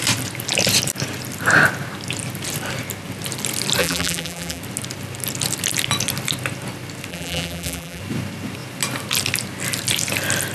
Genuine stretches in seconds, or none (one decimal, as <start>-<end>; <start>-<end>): 0.0-3.8; 4.6-7.1; 8.0-10.5